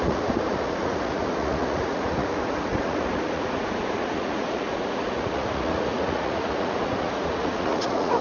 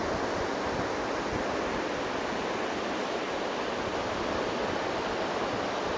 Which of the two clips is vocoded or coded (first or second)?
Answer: first